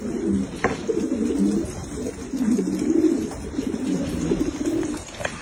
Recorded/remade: recorded